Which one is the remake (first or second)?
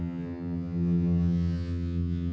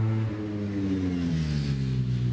first